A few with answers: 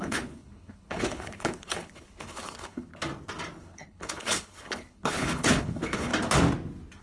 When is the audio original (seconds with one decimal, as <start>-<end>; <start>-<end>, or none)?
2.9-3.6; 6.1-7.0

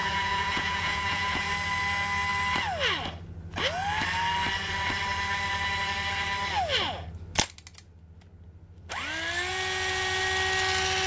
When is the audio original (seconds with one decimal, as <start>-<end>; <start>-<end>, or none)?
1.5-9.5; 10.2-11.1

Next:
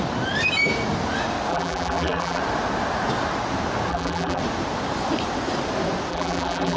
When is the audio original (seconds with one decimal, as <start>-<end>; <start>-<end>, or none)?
0.0-1.5; 2.4-3.9; 4.4-6.1

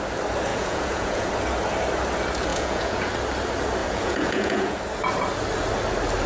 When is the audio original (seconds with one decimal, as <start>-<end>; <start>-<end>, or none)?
0.0-0.5; 1.3-2.5; 3.1-3.8; 4.8-6.3